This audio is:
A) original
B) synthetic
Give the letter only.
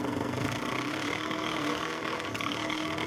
B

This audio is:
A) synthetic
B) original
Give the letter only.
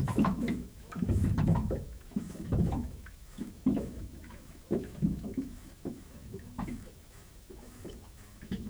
A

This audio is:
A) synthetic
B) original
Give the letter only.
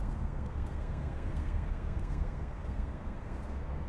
A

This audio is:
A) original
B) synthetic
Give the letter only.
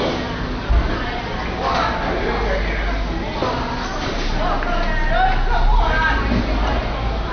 A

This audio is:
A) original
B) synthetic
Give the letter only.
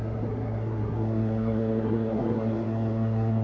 B